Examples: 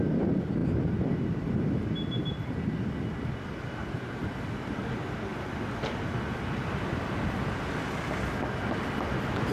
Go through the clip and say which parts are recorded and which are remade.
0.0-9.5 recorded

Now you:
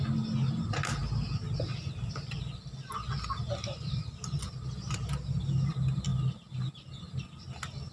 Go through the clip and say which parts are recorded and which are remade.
0.0-7.9 recorded

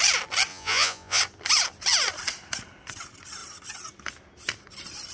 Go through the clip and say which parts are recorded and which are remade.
0.0-0.5 recorded; 0.5-1.2 remade; 1.2-5.1 recorded

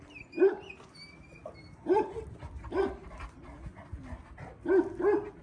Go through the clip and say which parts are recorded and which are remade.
0.0-5.4 recorded

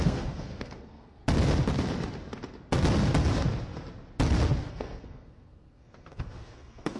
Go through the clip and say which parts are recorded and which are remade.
0.0-1.2 remade; 1.2-4.7 recorded; 4.7-7.0 remade

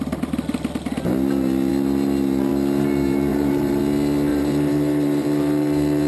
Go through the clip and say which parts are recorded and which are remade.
0.0-3.3 recorded; 3.3-3.8 remade; 3.8-4.3 recorded; 4.3-6.1 remade

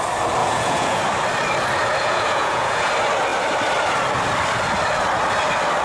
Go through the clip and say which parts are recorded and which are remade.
0.0-0.4 recorded; 0.4-1.0 remade; 1.0-2.0 recorded; 2.0-2.9 remade; 2.9-5.8 recorded

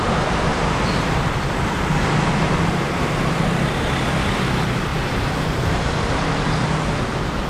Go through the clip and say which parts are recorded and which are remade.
0.0-0.5 recorded; 0.5-4.1 remade; 4.1-4.9 recorded; 4.9-6.1 remade; 6.1-7.5 recorded